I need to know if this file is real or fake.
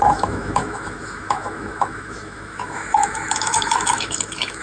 fake